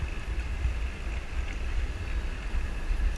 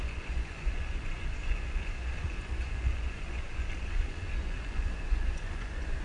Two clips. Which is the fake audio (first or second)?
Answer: second